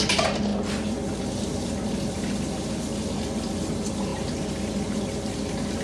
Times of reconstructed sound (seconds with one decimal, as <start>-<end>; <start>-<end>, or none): none